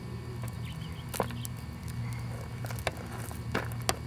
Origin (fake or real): real